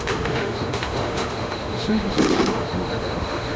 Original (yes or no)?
no